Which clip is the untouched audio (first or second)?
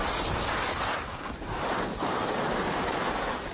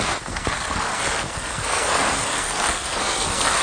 first